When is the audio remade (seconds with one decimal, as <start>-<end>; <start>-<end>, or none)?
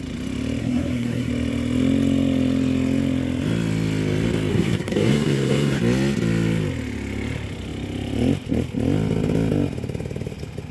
0.6-1.3; 4.5-5.8